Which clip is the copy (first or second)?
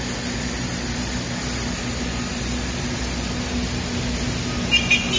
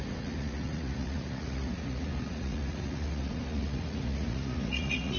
second